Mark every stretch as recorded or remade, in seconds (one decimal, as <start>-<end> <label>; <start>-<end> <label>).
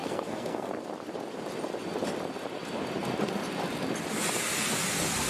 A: 0.0-0.7 remade; 0.7-5.3 recorded